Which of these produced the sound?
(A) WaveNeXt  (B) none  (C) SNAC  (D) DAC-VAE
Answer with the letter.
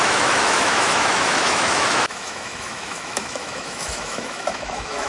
D